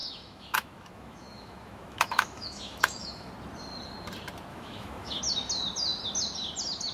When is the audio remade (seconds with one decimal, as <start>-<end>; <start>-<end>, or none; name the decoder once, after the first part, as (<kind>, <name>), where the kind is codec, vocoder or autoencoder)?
0.0-3.3 (autoencoder, DAC-VAE); 4.5-5.2